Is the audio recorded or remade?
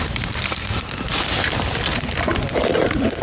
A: recorded